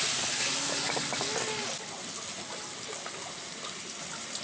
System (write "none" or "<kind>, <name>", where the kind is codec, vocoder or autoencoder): none